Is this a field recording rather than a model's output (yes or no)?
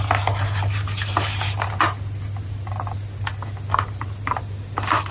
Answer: yes